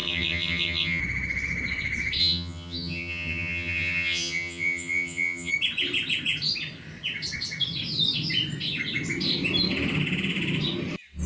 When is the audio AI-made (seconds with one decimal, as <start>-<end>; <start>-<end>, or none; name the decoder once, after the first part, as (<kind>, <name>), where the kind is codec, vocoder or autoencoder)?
0.0-1.0 (vocoder, HiFi-GAN); 2.2-5.5